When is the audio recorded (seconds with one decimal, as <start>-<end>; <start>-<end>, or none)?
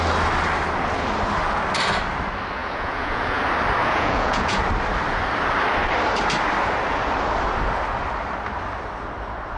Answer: 0.0-2.6; 3.4-3.8; 4.6-9.6